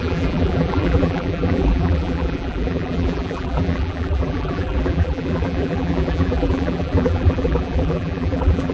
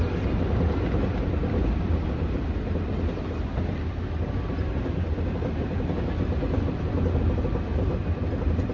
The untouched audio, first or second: second